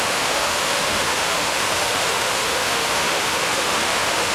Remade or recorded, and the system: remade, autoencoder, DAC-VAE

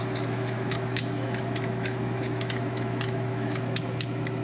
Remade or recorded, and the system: remade, autoencoder, DAC-VAE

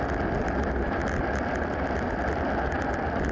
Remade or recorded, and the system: recorded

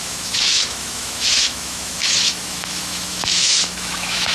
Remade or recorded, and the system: remade, autoencoder, DAC-VAE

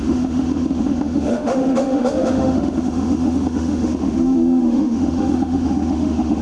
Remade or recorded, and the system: remade, autoencoder, DAC-VAE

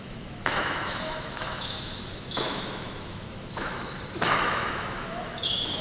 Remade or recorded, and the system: remade, autoencoder, DAC-VAE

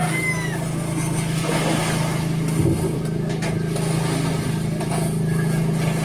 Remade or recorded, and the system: recorded